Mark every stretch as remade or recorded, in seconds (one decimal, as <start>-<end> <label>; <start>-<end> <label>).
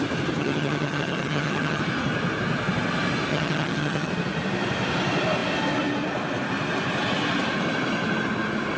0.0-0.4 recorded; 0.4-1.8 remade; 1.8-3.3 recorded; 3.3-4.1 remade; 4.1-8.8 recorded